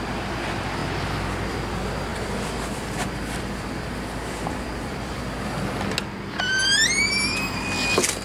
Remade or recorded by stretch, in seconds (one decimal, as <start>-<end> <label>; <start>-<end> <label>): 0.0-2.1 recorded; 2.1-5.2 remade; 5.2-8.2 recorded